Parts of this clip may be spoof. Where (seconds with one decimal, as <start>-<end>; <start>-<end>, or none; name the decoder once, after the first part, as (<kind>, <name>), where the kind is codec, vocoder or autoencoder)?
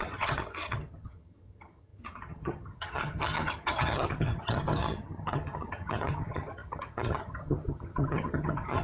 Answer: 0.0-8.8 (vocoder, HiFi-GAN)